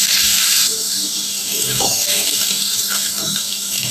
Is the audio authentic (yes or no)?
no